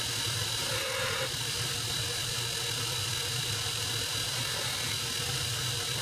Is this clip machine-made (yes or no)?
no